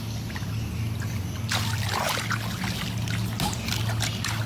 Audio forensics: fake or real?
real